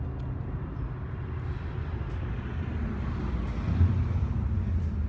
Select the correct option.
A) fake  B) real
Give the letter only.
B